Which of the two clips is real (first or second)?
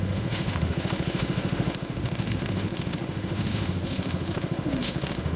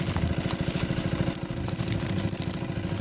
second